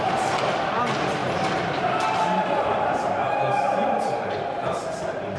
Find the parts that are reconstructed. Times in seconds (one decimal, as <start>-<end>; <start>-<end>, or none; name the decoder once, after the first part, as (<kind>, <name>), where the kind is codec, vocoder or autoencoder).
none